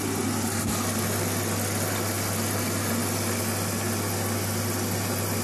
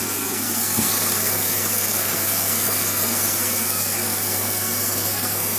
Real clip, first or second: first